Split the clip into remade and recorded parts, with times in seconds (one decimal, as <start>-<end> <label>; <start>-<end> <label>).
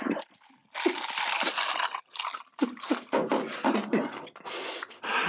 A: 0.0-5.3 recorded